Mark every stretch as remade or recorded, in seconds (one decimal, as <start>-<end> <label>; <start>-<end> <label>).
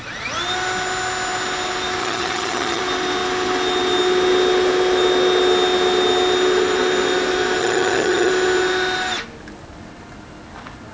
0.0-2.0 recorded; 2.0-2.8 remade; 2.8-7.6 recorded; 7.6-8.3 remade; 8.3-10.9 recorded